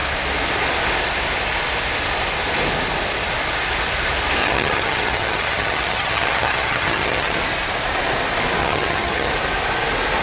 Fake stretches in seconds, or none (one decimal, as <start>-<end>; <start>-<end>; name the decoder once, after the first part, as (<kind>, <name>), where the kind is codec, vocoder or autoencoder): 4.4-7.4 (vocoder, HiFi-GAN); 8.6-9.3